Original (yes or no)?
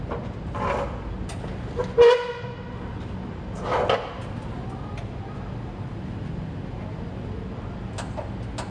yes